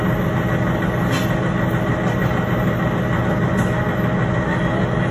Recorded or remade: recorded